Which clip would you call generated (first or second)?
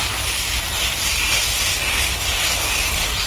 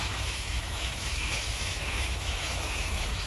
second